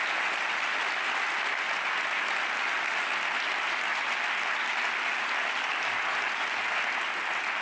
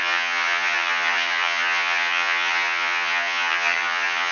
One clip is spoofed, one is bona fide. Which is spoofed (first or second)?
second